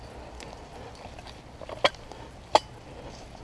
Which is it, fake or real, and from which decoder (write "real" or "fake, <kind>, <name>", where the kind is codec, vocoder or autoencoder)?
real